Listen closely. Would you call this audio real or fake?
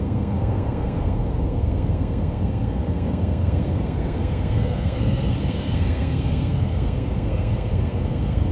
fake